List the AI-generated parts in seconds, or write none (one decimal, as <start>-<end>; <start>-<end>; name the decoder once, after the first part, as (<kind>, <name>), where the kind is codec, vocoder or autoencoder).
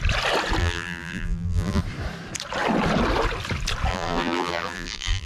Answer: 0.6-1.8 (vocoder, BigVGAN v2); 3.9-5.3